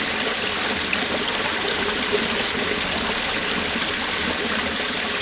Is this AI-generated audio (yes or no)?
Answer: no